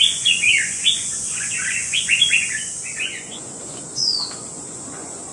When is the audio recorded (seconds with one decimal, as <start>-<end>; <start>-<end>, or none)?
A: none